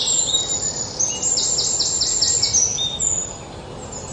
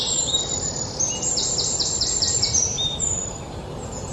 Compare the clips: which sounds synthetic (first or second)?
second